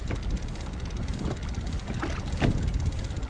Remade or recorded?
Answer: recorded